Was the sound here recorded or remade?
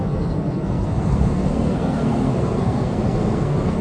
remade